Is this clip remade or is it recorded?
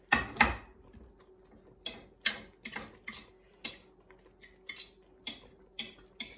recorded